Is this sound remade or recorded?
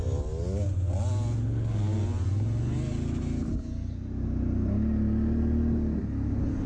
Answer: recorded